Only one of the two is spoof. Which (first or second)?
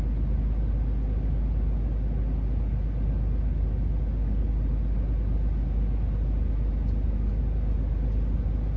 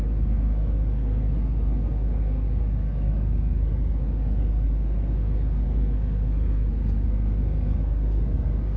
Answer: second